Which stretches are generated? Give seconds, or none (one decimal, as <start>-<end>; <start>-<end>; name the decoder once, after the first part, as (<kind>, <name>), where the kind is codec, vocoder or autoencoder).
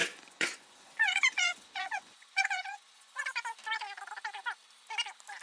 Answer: 0.0-3.2 (vocoder, Vocos)